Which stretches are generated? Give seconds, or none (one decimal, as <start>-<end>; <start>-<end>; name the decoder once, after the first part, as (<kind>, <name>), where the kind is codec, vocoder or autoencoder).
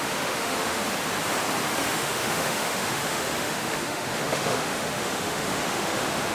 0.0-0.8 (autoencoder, DAC-VAE); 1.7-6.3